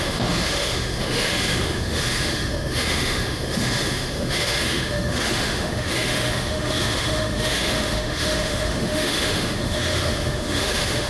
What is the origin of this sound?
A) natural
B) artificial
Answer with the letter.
B